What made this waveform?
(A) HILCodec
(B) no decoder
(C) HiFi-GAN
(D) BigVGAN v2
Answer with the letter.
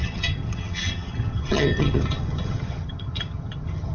C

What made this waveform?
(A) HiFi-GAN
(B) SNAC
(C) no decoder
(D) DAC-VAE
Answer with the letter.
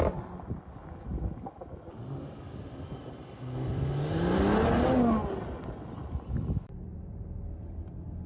C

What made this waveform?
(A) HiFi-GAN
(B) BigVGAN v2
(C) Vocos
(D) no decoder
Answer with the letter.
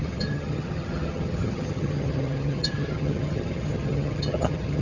A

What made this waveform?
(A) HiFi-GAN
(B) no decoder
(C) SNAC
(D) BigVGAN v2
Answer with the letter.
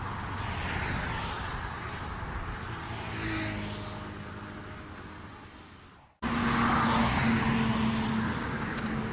B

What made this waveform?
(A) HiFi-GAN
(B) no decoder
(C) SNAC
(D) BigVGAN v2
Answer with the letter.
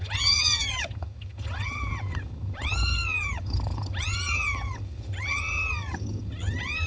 A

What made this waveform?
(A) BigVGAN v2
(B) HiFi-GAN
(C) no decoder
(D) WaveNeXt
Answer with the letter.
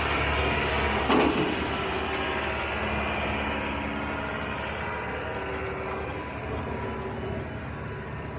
C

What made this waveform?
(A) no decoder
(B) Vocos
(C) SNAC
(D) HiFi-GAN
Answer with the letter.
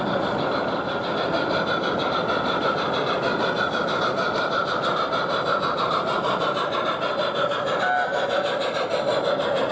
A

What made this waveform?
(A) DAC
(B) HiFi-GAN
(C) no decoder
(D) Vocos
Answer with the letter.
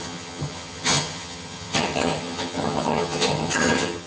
B